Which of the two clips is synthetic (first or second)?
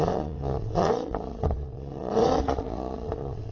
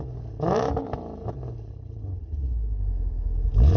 first